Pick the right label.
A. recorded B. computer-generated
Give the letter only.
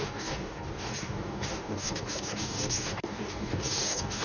B